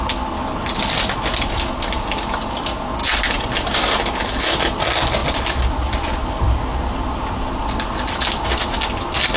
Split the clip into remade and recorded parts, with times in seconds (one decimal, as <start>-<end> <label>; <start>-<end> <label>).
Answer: 0.0-5.2 recorded; 5.2-5.7 remade; 5.7-6.7 recorded; 6.7-7.6 remade; 7.6-9.4 recorded